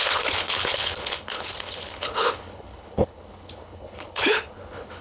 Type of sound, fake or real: fake